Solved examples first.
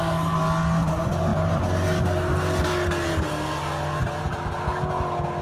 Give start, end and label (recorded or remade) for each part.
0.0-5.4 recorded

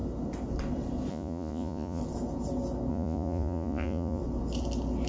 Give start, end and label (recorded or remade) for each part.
0.0-1.1 recorded; 1.1-2.0 remade; 2.0-2.9 recorded; 2.9-4.2 remade; 4.2-5.1 recorded